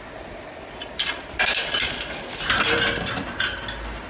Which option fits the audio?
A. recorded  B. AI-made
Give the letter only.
B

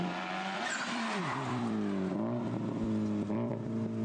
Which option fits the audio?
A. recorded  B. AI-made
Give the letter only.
B